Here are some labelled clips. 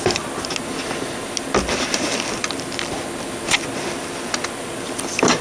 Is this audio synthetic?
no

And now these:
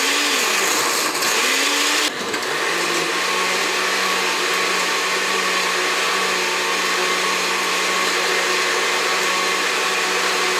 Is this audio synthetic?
no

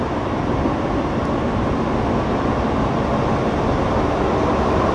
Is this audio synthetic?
no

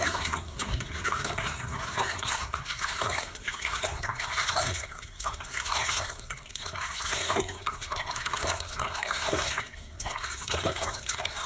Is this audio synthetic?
yes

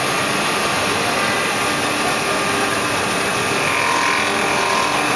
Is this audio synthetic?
no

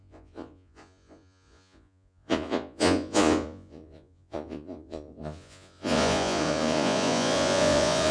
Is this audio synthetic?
yes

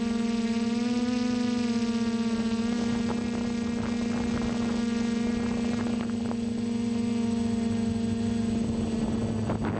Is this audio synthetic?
no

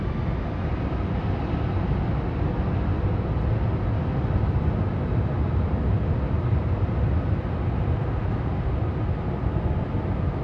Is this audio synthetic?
no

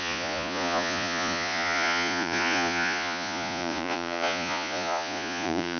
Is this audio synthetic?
yes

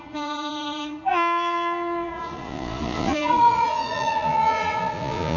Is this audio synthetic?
yes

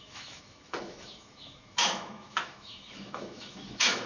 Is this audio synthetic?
yes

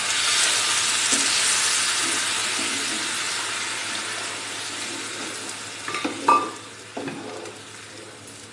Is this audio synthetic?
no